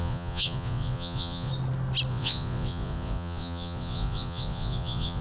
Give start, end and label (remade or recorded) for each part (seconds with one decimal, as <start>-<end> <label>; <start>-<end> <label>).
0.0-1.5 remade; 1.5-2.1 recorded; 2.1-5.2 remade